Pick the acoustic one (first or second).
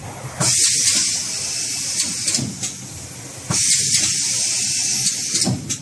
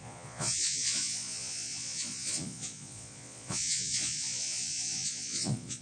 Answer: first